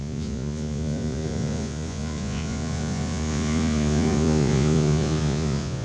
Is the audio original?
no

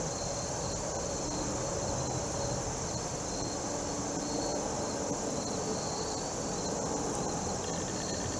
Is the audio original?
yes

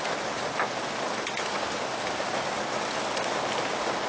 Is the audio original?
yes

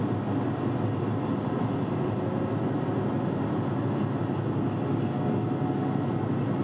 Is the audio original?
yes